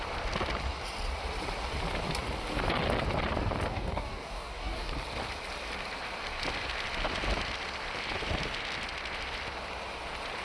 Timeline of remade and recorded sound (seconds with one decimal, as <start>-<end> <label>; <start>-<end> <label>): 0.0-3.7 recorded; 3.7-4.9 remade; 4.9-10.4 recorded